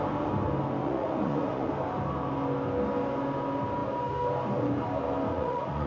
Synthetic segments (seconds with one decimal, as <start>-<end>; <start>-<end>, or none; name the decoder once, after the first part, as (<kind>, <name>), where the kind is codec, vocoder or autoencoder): 0.8-1.7 (vocoder, Vocos); 5.3-5.9